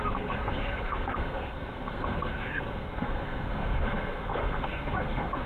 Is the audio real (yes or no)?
no